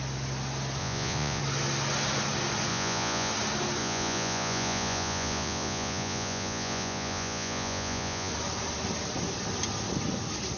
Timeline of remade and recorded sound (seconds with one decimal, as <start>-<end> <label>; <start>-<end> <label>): 0.0-0.8 recorded; 0.8-1.4 remade; 1.4-2.7 recorded; 2.7-3.3 remade; 3.3-3.8 recorded; 3.8-8.3 remade; 8.3-10.6 recorded